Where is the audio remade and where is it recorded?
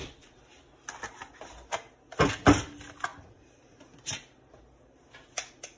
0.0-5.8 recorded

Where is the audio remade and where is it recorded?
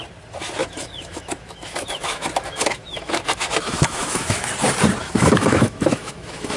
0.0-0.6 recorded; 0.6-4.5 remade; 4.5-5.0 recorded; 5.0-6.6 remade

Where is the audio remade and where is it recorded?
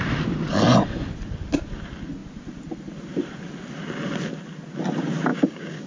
0.0-5.3 recorded; 5.3-5.9 remade